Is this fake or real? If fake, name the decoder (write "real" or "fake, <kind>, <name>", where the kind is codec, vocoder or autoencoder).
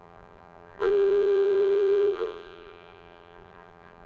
fake, vocoder, BigVGAN v2